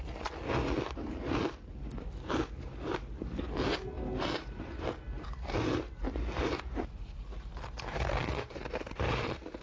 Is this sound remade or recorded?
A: recorded